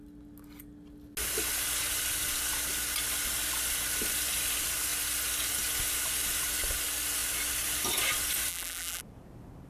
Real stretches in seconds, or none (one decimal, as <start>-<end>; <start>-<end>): 0.0-8.5; 9.0-9.7